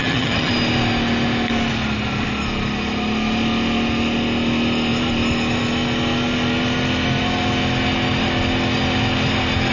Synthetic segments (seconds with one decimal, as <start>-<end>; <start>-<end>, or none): 0.0-0.5